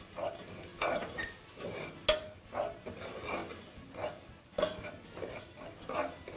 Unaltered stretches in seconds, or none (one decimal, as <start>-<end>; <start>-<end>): 0.0-6.4